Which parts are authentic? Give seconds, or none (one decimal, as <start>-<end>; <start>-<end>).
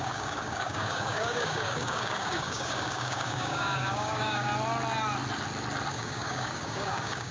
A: 4.5-5.9